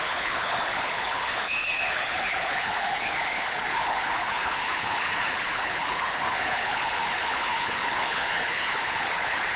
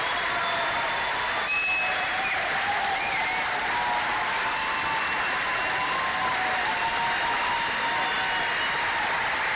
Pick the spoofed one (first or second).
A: first